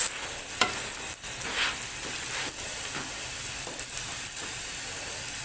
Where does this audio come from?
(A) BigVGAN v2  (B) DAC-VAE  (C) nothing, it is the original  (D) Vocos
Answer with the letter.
C